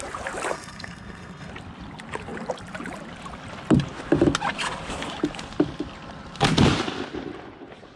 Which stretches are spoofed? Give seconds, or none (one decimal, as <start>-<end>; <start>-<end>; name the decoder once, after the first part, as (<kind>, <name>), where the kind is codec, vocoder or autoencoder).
0.5-1.5 (codec, SNAC)

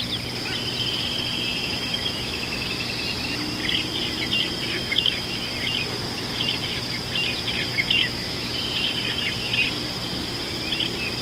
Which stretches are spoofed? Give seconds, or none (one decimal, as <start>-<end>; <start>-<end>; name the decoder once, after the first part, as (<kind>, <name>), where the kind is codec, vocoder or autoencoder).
1.5-2.7 (autoencoder, DAC-VAE); 4.8-5.5; 7.7-8.5

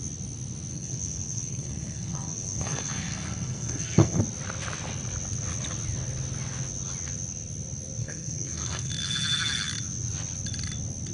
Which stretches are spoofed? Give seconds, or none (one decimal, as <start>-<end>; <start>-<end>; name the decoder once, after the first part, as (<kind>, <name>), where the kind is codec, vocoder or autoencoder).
0.7-4.2 (codec, SNAC); 8.0-8.9

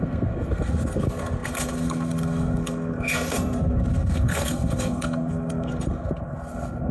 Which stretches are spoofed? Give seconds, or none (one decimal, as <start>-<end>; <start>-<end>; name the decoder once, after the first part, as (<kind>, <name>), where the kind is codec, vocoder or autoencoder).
0.0-6.9 (codec, SNAC)

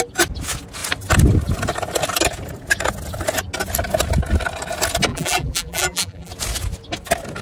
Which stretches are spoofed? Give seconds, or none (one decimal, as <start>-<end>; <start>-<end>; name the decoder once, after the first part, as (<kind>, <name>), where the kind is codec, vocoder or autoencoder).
5.1-6.3 (vocoder, BigVGAN v2)

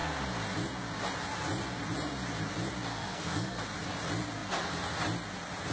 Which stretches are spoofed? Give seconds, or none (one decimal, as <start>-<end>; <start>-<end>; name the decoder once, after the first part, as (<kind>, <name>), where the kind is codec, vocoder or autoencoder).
2.9-3.6 (codec, SNAC)

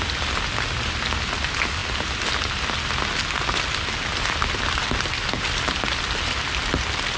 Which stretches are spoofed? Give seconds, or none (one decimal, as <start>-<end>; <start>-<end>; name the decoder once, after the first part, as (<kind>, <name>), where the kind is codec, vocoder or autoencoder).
none

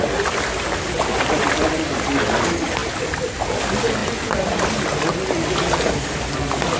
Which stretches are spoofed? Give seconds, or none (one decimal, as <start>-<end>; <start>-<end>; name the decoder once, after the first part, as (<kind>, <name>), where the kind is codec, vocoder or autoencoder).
none